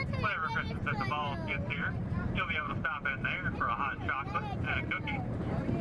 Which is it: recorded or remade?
remade